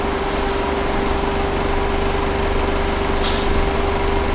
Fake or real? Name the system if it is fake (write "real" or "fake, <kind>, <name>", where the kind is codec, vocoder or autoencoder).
real